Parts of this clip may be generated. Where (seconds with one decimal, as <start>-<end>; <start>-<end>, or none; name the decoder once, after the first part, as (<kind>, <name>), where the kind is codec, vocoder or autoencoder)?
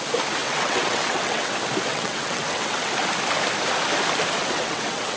0.4-1.5 (vocoder, WaveNeXt); 1.9-2.9; 4.4-5.2